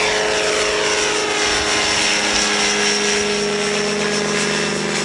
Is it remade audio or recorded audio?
recorded